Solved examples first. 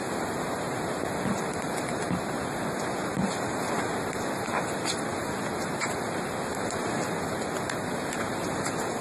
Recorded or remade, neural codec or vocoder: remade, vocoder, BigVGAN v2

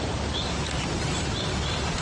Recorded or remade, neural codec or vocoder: remade, vocoder, BigVGAN v2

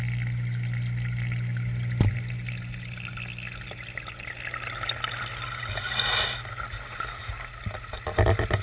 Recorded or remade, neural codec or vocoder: recorded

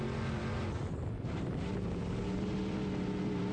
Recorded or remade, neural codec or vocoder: recorded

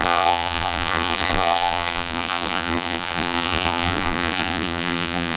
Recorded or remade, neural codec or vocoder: remade, vocoder, BigVGAN v2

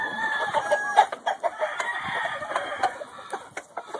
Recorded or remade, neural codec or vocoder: remade, vocoder, BigVGAN v2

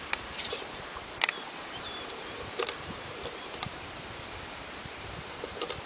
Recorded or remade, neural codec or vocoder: remade, vocoder, BigVGAN v2